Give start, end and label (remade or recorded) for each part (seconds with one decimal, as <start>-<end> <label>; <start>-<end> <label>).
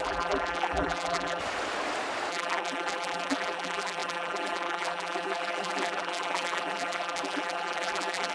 0.0-1.4 remade; 1.4-2.3 recorded; 2.3-8.3 remade